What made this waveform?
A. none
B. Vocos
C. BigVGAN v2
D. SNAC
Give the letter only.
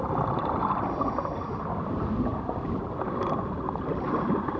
A